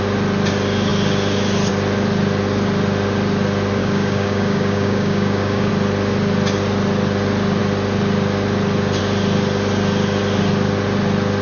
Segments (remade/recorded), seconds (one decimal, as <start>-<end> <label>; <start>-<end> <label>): 0.0-3.8 recorded; 3.8-5.7 remade; 5.7-11.4 recorded